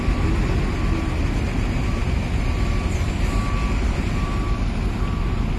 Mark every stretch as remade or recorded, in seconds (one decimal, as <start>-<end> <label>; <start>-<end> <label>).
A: 0.0-5.6 recorded